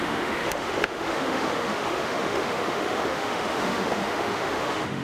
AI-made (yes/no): yes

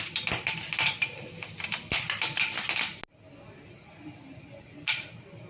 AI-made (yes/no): no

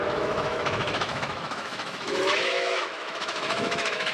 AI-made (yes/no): yes